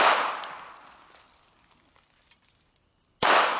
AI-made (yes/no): no